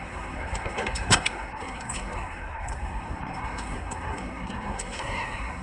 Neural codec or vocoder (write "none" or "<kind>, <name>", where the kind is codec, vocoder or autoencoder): codec, SNAC